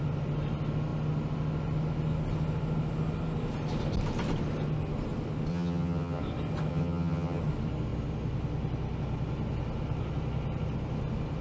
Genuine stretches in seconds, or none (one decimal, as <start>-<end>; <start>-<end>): 0.0-5.5; 6.2-6.7; 7.4-11.4